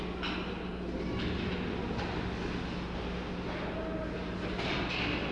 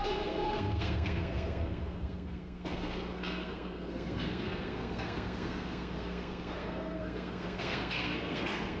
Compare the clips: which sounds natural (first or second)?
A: first